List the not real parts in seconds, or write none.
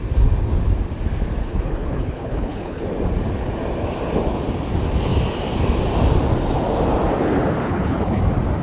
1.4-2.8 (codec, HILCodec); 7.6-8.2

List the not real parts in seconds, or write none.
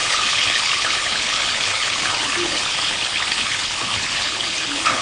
0.0-5.0 (codec, HILCodec)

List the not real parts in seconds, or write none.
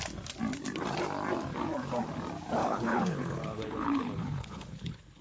2.6-5.2 (codec, HILCodec)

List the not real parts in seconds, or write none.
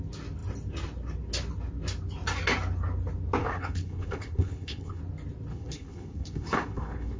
3.4-5.0 (codec, HILCodec); 5.5-7.2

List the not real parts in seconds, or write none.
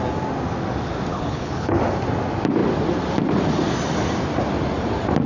1.1-1.8 (codec, HILCodec)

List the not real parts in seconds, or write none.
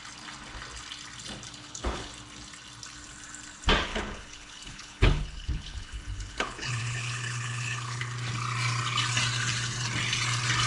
1.6-2.1 (codec, HILCodec); 3.9-8.0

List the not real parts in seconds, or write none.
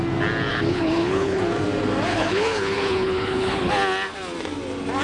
0.5-1.4 (codec, HILCodec); 2.1-3.7